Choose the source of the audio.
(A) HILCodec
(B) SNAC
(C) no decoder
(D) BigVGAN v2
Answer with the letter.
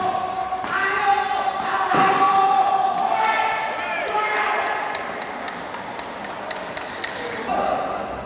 C